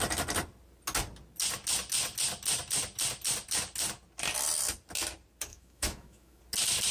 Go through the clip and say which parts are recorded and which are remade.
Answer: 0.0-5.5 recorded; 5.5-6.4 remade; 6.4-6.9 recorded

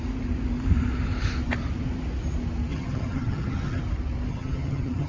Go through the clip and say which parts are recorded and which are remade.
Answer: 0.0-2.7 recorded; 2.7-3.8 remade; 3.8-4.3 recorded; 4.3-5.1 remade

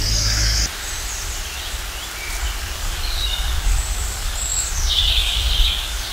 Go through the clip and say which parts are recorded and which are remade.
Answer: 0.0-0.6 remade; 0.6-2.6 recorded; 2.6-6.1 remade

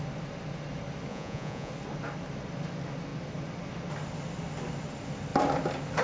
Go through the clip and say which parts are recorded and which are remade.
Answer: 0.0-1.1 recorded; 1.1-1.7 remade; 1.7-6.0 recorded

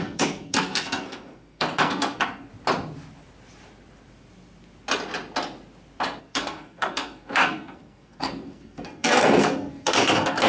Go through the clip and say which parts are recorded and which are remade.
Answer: 0.0-2.5 remade; 2.5-6.2 recorded; 6.2-10.5 remade

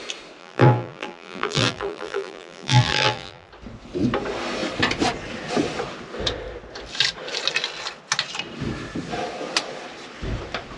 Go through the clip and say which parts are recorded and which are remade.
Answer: 0.0-0.4 recorded; 0.4-3.5 remade; 3.5-10.8 recorded

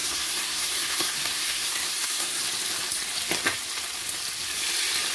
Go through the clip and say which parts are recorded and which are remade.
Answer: 0.0-2.4 remade; 2.4-5.1 recorded